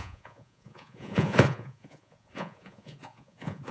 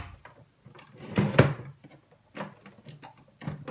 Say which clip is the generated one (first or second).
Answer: first